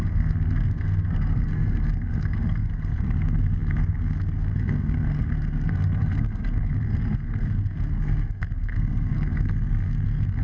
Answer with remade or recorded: remade